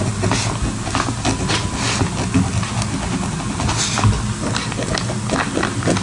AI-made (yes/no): no